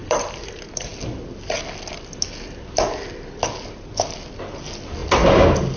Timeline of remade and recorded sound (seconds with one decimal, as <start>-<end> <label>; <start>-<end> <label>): 0.0-0.5 remade; 0.5-5.0 recorded; 5.0-5.8 remade